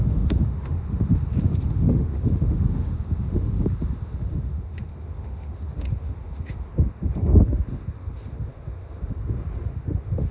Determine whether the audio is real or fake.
fake